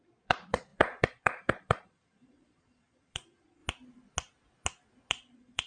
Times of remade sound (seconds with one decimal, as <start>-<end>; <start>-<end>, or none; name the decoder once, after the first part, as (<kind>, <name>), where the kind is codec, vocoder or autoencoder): 0.0-3.6 (vocoder, Vocos); 5.1-5.7